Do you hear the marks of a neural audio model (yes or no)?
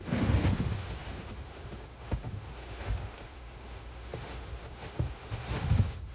yes